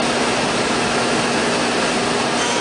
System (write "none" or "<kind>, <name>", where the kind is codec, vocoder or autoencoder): none